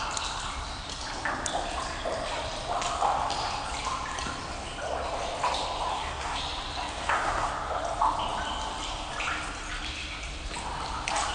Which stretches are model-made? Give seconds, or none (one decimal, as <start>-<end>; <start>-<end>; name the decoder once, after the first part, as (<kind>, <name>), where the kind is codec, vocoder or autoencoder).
5.9-6.4 (codec, SNAC); 6.9-7.5

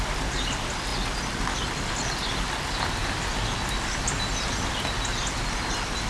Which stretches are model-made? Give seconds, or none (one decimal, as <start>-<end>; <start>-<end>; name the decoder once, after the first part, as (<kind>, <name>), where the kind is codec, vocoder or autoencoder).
none

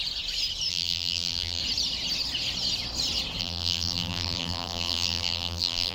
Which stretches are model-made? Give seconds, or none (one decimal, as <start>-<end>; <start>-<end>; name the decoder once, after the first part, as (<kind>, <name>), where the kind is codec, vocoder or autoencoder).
0.7-1.6 (vocoder, BigVGAN v2); 3.4-5.9

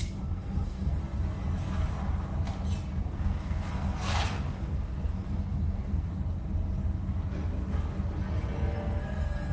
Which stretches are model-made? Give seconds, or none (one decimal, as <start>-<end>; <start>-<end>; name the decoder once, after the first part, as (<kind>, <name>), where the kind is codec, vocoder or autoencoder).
0.0-1.0 (codec, SNAC); 3.0-6.1; 8.7-9.5